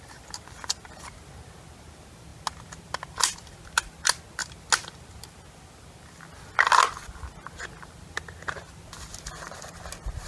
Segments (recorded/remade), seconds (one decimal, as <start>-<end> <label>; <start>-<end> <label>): 0.0-10.3 recorded